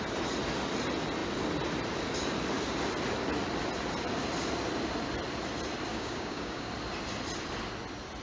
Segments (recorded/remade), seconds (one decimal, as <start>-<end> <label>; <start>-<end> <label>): 0.0-5.9 recorded; 5.9-6.7 remade; 6.7-8.2 recorded